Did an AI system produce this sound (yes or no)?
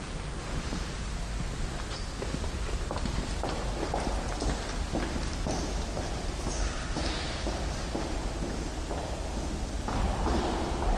no